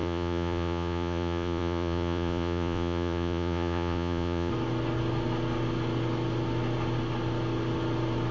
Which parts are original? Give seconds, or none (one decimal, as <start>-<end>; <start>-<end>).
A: 4.5-8.3

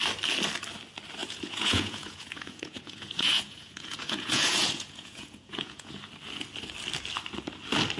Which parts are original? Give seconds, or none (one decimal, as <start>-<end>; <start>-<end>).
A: 0.0-1.2; 6.0-8.0

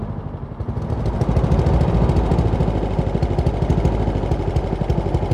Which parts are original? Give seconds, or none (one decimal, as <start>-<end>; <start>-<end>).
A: 0.0-5.3

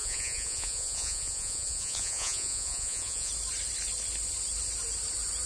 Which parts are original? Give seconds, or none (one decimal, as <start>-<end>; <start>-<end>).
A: 3.3-5.5

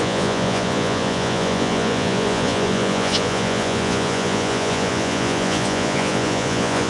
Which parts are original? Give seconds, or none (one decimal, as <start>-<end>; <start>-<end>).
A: none

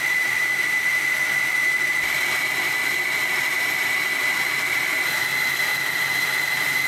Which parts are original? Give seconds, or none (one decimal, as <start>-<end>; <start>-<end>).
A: 0.0-6.9

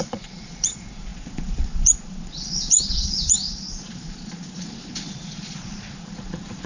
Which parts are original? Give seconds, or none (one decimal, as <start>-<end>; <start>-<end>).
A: none

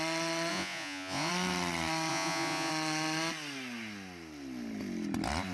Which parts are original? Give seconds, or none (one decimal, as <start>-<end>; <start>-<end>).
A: 0.0-0.5; 1.3-2.1; 2.7-5.5